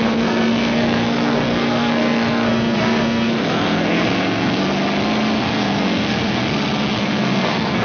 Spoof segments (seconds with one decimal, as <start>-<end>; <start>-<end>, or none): 0.0-4.6; 5.4-6.4; 7.0-7.8